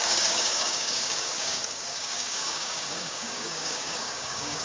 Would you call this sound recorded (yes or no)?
no